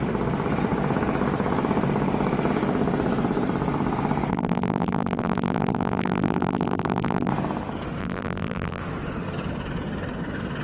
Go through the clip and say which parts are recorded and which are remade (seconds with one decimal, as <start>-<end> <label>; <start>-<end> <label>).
0.0-4.3 recorded; 4.3-7.3 remade; 7.3-8.0 recorded; 8.0-8.8 remade; 8.8-10.6 recorded